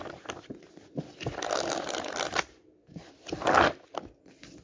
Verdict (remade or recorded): recorded